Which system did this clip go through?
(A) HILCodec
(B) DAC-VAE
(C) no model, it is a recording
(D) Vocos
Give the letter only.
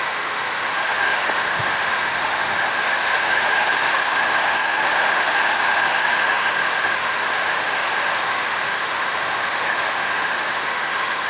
B